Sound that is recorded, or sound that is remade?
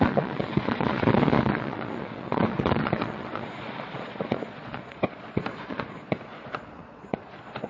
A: remade